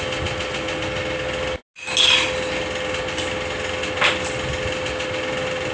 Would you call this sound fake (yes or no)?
no